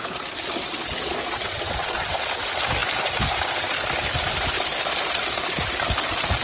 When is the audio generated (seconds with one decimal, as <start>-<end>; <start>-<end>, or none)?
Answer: 0.7-2.1